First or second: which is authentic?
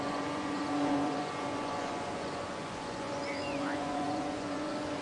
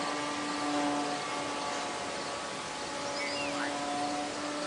second